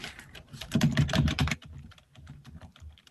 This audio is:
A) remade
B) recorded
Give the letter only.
A